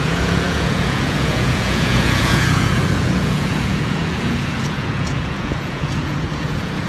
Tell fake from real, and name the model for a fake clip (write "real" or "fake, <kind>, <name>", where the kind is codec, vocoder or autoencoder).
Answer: fake, vocoder, Vocos